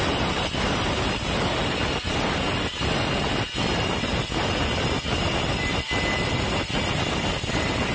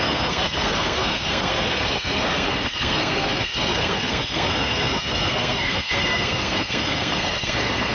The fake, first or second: second